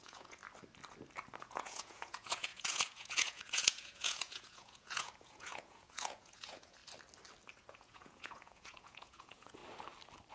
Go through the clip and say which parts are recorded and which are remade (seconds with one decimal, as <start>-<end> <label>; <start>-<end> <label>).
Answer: 0.0-0.4 remade; 0.4-1.4 recorded; 1.4-6.8 remade; 6.8-7.7 recorded; 7.7-9.6 remade; 9.6-10.3 recorded